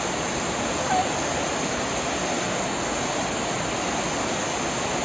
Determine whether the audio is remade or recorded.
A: recorded